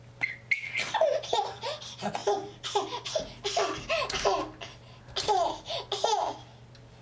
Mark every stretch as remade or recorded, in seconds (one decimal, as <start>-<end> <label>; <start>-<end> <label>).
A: 0.0-7.0 recorded